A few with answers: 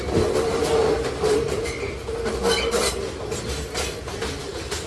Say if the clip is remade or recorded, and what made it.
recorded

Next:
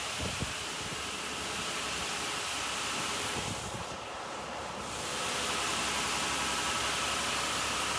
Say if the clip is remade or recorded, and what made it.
recorded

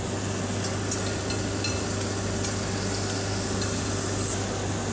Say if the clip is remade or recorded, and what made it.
recorded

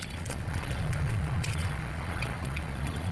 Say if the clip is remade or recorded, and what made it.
remade, vocoder, Vocos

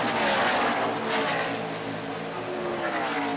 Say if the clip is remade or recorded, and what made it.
recorded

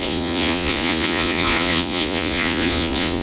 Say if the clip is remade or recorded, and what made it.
remade, vocoder, Vocos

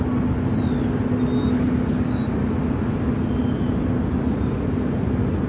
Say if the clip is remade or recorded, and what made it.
recorded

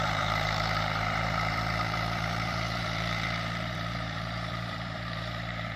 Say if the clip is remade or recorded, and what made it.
remade, vocoder, BigVGAN v2